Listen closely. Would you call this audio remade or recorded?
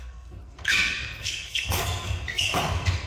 remade